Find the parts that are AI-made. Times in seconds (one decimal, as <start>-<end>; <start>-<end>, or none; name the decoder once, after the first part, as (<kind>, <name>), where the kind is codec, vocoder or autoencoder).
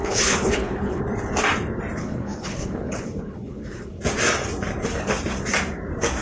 0.0-1.0 (codec, HILCodec); 2.0-4.0